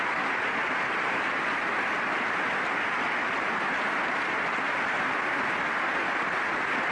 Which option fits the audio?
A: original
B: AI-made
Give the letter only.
A